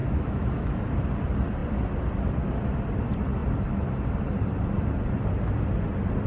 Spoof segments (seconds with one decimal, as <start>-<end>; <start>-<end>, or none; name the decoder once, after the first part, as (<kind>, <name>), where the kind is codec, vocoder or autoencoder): 0.0-0.8 (autoencoder, DAC-VAE)